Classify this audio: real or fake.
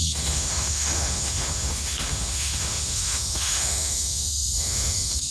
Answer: fake